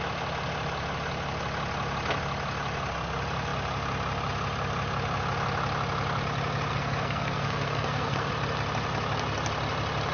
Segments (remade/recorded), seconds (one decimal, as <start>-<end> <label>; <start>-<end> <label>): 0.0-6.7 recorded; 6.7-8.3 remade; 8.3-10.1 recorded